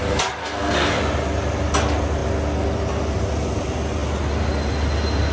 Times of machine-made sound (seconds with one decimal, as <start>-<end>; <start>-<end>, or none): 0.4-1.0